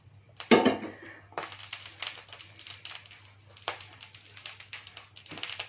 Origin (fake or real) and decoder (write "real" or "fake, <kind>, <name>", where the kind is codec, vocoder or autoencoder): real